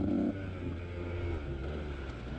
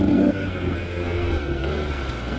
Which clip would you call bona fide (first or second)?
first